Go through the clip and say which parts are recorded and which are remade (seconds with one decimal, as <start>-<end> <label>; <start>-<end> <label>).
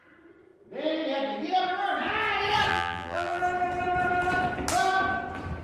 0.0-2.7 recorded; 2.7-3.4 remade; 3.4-5.6 recorded